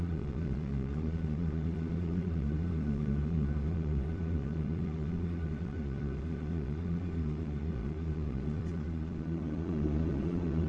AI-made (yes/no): yes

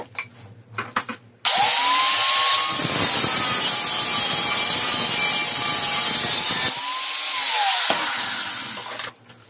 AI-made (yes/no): no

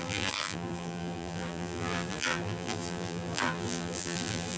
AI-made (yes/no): yes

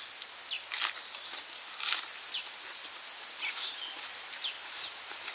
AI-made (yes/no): no